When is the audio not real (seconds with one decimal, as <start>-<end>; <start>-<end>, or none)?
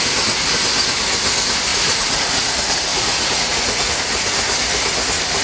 1.7-2.5; 2.9-3.9